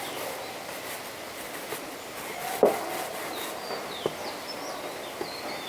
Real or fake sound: real